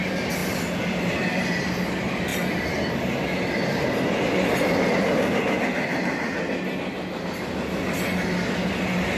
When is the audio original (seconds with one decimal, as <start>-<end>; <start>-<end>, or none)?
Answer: 0.0-9.2